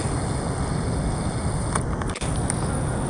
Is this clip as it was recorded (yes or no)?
yes